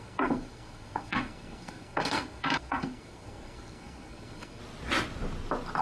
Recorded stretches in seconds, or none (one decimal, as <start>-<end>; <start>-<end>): 4.6-5.8